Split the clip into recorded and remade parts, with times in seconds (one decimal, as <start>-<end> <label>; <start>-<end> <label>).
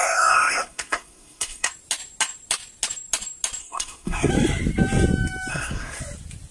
0.0-1.7 remade; 1.7-3.6 recorded; 3.6-4.3 remade; 4.3-5.5 recorded; 5.5-6.0 remade; 6.0-6.5 recorded